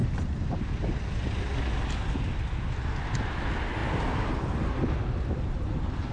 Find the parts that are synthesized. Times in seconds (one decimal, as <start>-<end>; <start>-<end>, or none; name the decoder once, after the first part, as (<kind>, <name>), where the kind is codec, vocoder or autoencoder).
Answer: 0.0-0.7 (vocoder, BigVGAN v2)